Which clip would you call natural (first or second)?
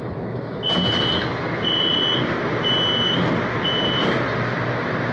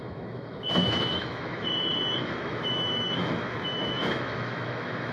first